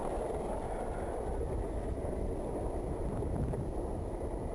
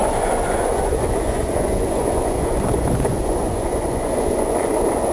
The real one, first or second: first